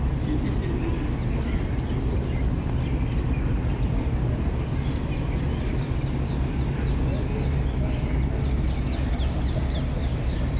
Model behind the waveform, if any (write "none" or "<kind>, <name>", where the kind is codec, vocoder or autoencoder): none